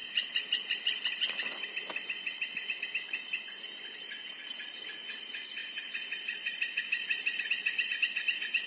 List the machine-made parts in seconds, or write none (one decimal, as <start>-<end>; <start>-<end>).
none